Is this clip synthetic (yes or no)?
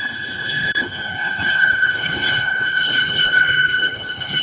yes